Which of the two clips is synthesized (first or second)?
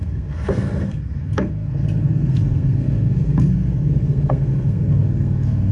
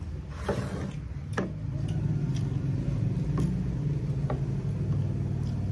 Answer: first